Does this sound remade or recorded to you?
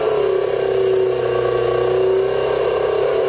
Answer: recorded